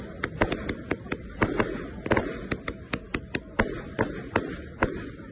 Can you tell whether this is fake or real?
real